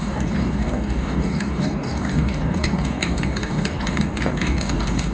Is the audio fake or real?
fake